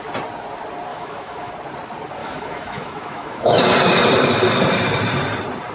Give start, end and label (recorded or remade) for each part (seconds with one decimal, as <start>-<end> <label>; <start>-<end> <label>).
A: 0.0-0.9 recorded; 0.9-1.5 remade; 1.5-2.2 recorded; 2.2-3.6 remade; 3.6-5.7 recorded